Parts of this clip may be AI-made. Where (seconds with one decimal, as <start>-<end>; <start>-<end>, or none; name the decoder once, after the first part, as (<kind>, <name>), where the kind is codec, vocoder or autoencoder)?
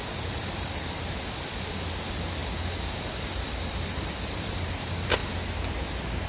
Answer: 0.0-2.4 (vocoder, BigVGAN v2); 3.1-5.2